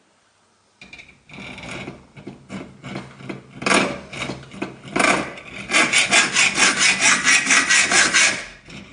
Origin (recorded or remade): recorded